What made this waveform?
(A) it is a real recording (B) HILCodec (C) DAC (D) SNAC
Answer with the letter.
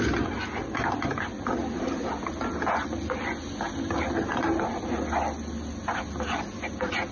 A